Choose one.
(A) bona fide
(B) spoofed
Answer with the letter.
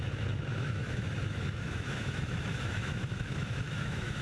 B